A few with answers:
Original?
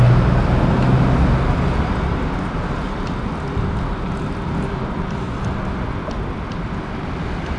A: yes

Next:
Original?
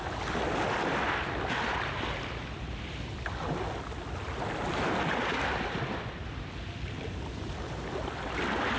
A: yes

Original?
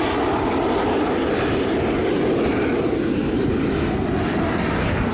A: yes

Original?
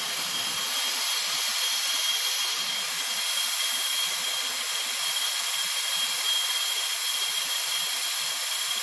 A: yes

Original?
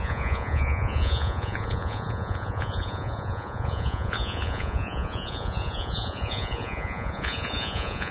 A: no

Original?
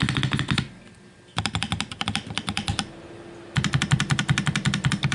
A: yes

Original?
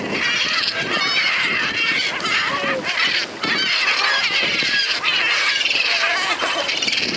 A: yes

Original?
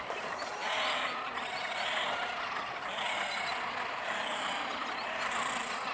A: yes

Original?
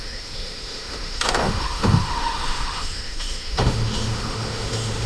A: no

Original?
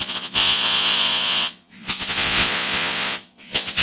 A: no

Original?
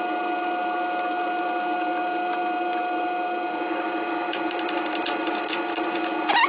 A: yes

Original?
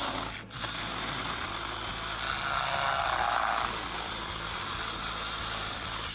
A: yes